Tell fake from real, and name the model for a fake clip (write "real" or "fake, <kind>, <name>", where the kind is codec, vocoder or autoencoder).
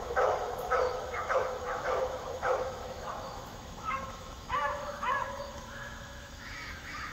fake, autoencoder, DAC-VAE